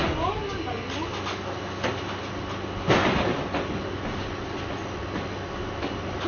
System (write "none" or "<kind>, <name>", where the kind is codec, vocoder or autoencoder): none